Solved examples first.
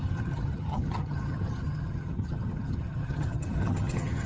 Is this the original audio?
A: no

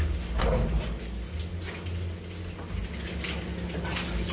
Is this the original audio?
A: yes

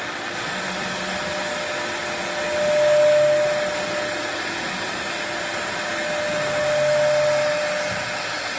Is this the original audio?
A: yes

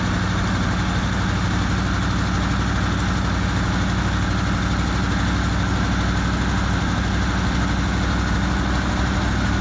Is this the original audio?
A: yes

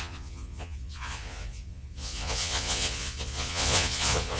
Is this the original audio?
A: no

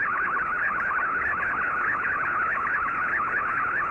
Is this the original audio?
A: no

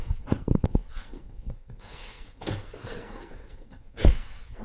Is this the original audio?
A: no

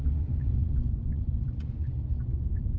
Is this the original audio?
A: no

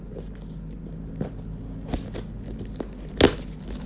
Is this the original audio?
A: yes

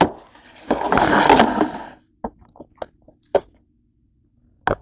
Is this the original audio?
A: yes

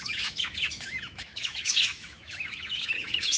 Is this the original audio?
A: no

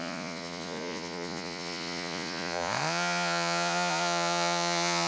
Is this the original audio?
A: no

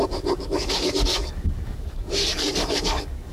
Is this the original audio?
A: no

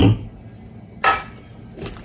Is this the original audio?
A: yes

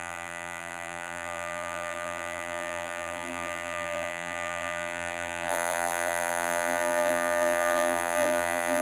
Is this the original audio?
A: no